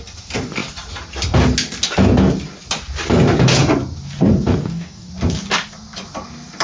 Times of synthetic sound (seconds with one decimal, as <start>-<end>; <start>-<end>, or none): 4.6-5.1